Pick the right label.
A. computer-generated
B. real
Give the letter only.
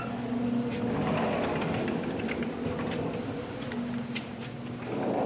B